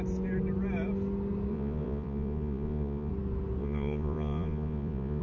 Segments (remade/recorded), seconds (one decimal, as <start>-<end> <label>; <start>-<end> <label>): 0.0-1.5 recorded; 1.5-3.1 remade; 3.1-3.6 recorded; 3.6-5.2 remade